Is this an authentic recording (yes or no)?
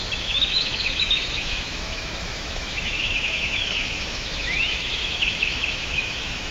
no